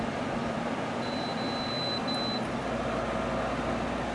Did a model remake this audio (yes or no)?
no